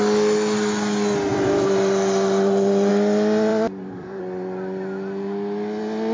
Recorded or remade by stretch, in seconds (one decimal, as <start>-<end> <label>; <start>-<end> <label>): 0.0-1.3 recorded; 1.3-2.9 remade; 2.9-3.5 recorded; 3.5-4.2 remade; 4.2-6.1 recorded